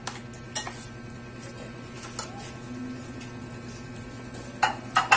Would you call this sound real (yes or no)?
yes